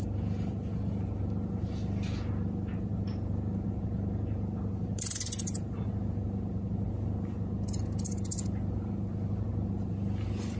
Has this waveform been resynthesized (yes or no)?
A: no